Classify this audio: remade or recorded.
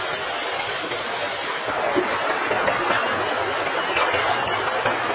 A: recorded